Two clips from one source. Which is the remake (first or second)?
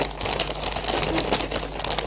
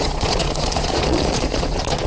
second